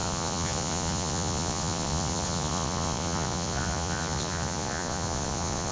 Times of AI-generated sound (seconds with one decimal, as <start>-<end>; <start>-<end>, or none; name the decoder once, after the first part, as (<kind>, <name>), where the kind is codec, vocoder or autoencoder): 0.0-5.7 (vocoder, Vocos)

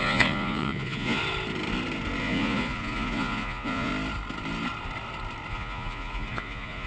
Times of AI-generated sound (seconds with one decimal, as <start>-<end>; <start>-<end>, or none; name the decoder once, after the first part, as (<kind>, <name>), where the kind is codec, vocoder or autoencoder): 0.0-1.2 (vocoder, Vocos); 2.2-3.9; 5.5-6.9

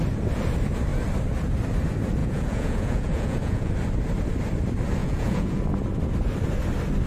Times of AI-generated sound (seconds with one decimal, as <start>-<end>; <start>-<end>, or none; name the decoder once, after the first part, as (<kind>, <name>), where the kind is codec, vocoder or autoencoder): 2.2-3.7 (vocoder, Vocos); 5.0-5.6

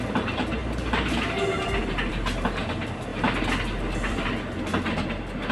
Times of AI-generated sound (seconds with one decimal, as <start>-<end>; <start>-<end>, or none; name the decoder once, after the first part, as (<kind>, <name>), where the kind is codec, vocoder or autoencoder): none